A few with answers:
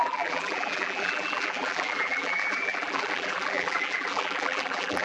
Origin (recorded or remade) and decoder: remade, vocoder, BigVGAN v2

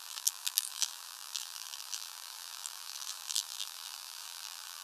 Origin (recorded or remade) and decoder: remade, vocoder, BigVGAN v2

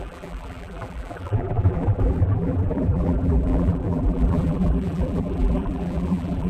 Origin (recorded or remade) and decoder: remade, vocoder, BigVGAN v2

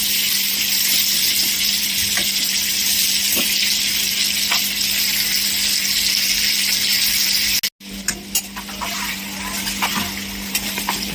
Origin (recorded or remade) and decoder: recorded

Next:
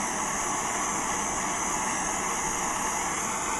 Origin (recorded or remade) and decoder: recorded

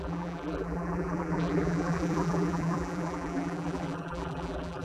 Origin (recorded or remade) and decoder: remade, vocoder, BigVGAN v2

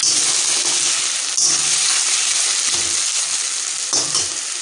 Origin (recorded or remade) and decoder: recorded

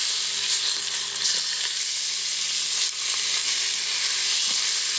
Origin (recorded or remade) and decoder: recorded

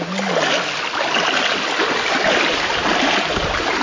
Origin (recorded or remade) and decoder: recorded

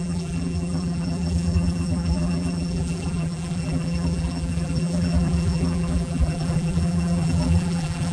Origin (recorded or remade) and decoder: remade, vocoder, BigVGAN v2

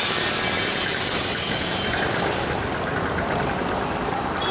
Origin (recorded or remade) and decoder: remade, vocoder, BigVGAN v2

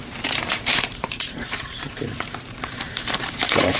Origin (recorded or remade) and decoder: remade, vocoder, BigVGAN v2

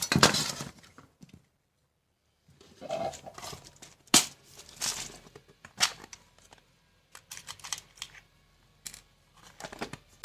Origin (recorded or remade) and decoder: recorded